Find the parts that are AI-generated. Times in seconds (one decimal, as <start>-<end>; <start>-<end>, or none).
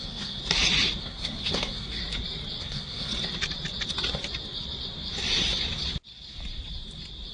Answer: 0.0-0.4; 1.0-2.0; 2.6-3.1